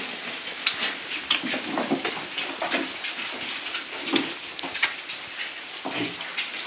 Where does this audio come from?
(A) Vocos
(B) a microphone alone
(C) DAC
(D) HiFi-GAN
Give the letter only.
B